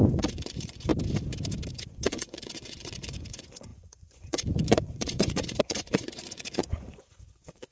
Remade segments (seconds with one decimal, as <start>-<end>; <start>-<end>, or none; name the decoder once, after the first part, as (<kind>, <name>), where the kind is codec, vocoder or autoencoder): 0.0-0.9 (vocoder, Vocos); 1.7-7.7